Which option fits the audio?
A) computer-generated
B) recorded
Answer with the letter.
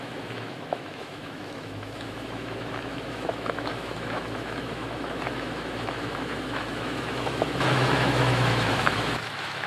A